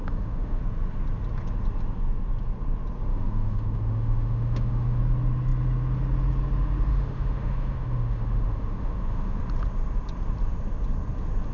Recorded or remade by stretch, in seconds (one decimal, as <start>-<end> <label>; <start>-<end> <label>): 0.0-0.6 remade; 0.6-3.1 recorded; 3.1-5.0 remade; 5.0-6.9 recorded; 6.9-9.4 remade; 9.4-11.5 recorded